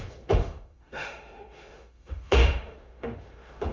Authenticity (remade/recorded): remade